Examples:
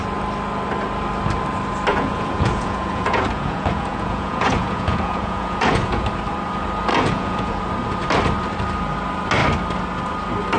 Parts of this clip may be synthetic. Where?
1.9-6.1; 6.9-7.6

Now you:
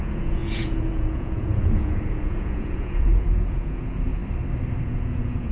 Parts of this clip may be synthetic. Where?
0.0-4.2; 4.8-5.5

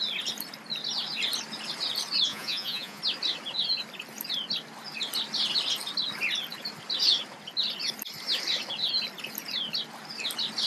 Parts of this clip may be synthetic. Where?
2.3-3.0

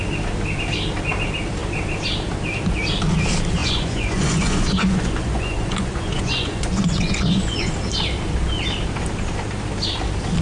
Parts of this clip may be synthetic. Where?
3.6-7.7

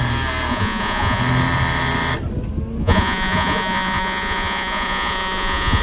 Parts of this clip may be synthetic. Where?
0.5-1.2; 2.8-5.8

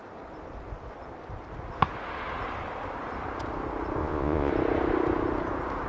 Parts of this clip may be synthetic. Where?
4.0-4.5

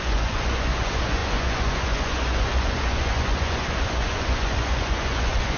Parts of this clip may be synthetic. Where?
0.0-5.6